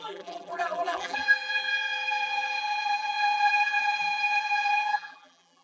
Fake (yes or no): yes